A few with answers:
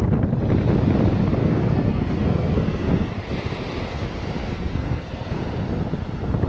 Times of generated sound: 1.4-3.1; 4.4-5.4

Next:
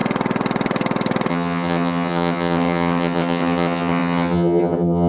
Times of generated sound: 1.3-5.1

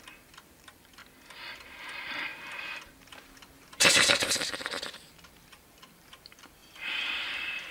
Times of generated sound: 0.0-1.0; 1.7-7.7

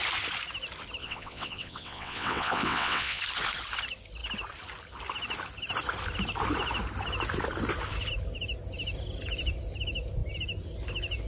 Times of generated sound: 1.0-3.2

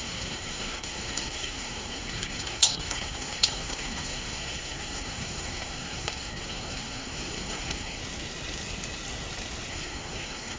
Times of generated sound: 0.0-8.0; 9.7-10.6

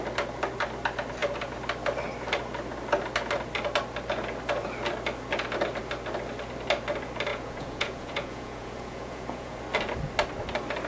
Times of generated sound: 7.3-9.6